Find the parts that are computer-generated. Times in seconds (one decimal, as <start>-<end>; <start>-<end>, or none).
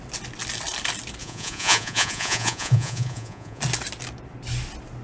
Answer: 1.2-3.6